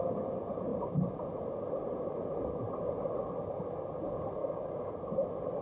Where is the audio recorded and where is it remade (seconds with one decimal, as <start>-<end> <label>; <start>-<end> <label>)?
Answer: 0.0-4.4 recorded; 4.4-4.9 remade; 4.9-5.6 recorded